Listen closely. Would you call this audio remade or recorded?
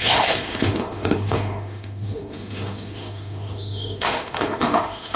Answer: remade